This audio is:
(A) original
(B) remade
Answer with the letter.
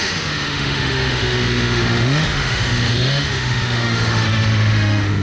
B